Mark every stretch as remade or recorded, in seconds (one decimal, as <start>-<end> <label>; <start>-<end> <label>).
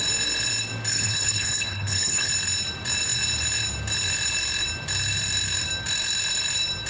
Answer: 0.0-0.9 recorded; 0.9-2.3 remade; 2.3-6.9 recorded